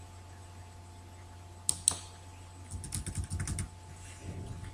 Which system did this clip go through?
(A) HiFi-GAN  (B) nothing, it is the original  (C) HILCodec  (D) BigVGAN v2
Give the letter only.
B